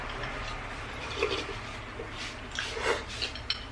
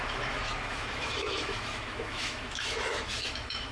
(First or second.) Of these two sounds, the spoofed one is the second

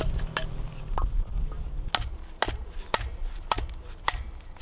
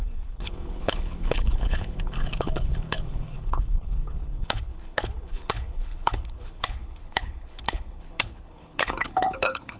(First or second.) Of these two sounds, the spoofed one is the second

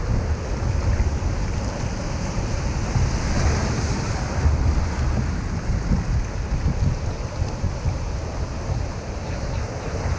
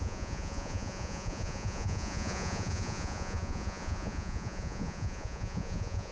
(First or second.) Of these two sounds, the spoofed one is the second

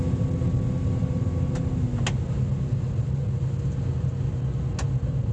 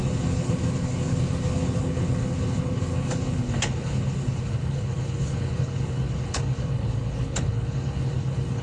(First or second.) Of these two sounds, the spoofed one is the second